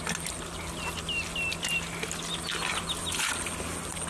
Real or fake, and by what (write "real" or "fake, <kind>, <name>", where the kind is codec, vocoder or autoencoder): real